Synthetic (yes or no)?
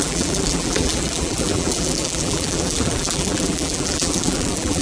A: yes